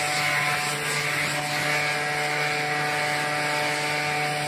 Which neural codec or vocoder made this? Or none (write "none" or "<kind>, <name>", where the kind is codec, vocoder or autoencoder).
none